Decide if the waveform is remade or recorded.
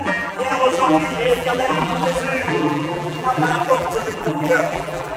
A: remade